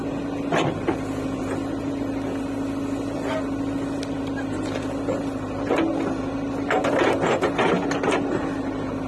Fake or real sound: real